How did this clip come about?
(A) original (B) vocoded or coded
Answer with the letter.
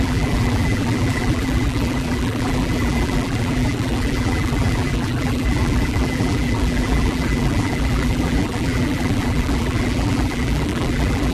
B